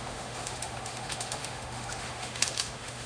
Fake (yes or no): yes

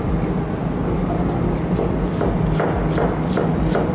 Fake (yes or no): no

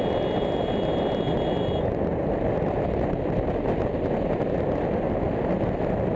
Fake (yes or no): no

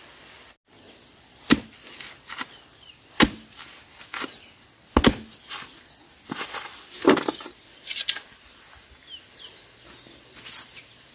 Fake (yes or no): no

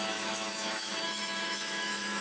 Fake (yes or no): yes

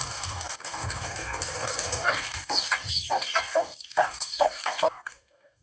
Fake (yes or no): yes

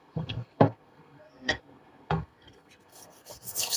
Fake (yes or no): yes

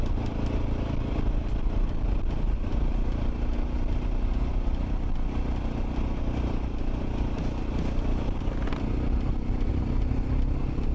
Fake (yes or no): no